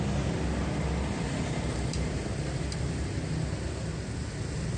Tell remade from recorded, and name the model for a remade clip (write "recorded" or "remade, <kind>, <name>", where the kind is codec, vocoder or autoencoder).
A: recorded